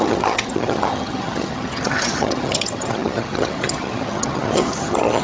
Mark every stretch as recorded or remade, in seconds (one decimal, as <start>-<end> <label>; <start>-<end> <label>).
0.0-5.2 remade